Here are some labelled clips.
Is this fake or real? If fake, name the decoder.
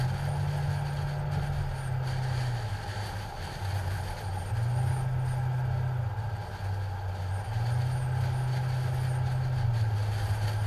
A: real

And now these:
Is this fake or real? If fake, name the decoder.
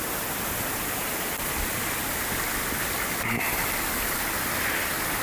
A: real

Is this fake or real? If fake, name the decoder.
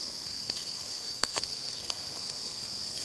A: fake, codec, SNAC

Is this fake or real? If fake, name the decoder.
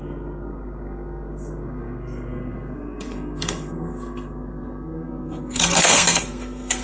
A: fake, codec, SNAC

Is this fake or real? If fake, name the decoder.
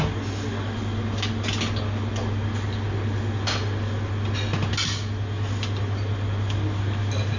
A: real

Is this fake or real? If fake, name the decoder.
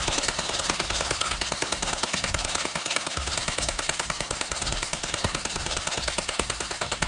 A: fake, codec, SNAC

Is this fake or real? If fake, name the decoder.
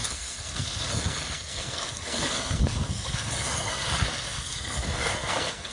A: fake, codec, SNAC